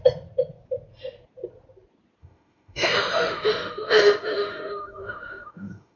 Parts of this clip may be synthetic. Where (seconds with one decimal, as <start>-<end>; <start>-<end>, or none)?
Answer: 2.2-6.0

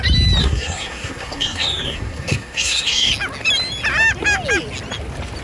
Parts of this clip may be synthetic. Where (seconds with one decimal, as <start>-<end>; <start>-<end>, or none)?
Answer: 0.4-3.1

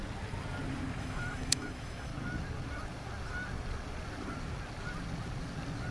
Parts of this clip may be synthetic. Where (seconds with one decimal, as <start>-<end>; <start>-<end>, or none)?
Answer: 1.0-2.1